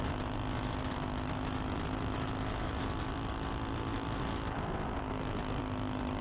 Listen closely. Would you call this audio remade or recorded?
recorded